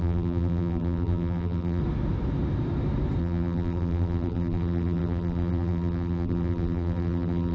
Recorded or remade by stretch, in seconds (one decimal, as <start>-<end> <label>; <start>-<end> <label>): 0.0-1.8 remade; 1.8-3.2 recorded; 3.2-7.5 remade